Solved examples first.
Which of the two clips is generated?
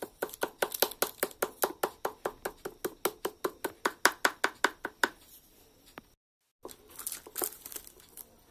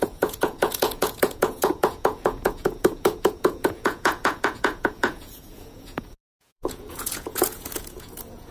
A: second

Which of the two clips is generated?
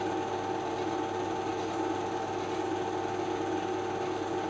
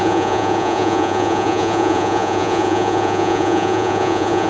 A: second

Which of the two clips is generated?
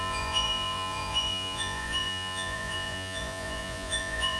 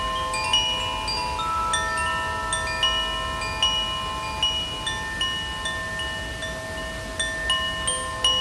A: first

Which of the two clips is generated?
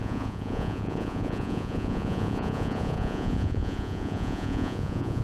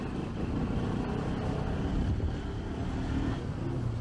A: first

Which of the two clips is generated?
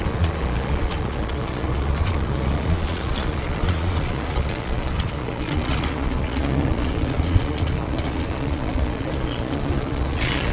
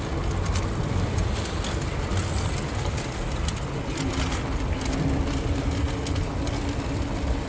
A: first